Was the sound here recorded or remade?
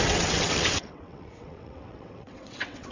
remade